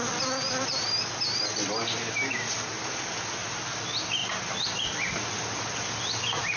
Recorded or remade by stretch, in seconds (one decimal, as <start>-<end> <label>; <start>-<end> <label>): 0.0-6.6 recorded